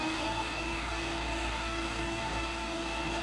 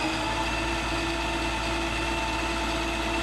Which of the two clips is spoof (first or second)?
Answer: first